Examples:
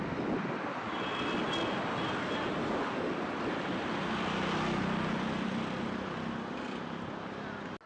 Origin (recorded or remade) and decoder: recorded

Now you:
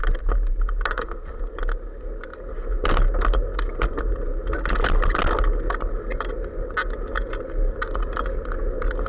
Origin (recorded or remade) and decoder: recorded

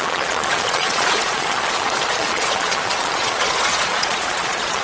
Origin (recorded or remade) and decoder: remade, vocoder, Vocos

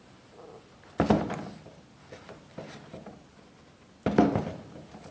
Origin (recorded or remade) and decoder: recorded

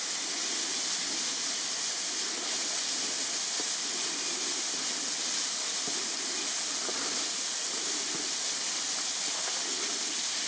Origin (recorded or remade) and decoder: recorded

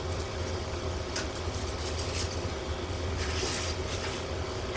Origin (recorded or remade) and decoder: recorded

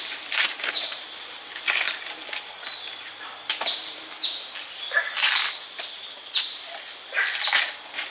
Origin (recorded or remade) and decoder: recorded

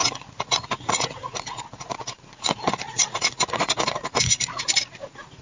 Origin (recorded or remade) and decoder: remade, vocoder, Vocos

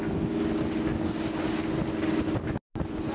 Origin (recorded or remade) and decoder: recorded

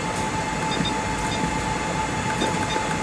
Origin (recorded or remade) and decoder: recorded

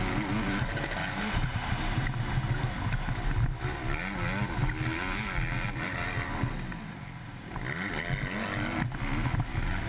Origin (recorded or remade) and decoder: recorded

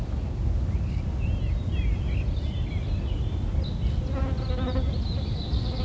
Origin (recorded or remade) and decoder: recorded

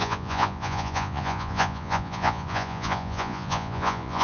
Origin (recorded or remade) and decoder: remade, vocoder, Vocos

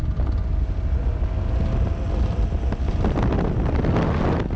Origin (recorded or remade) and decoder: recorded